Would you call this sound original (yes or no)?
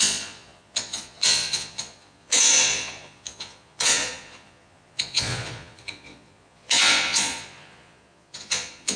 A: no